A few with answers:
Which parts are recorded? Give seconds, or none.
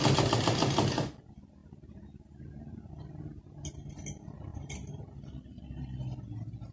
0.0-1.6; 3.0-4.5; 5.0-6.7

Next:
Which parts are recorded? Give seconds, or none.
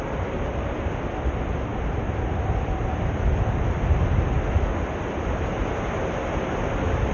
0.0-7.1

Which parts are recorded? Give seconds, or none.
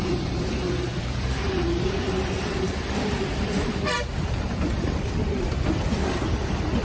none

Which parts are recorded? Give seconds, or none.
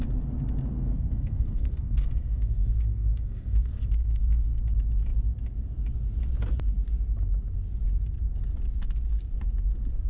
0.0-0.7; 4.6-10.1